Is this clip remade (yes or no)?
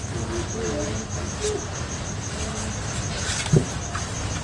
no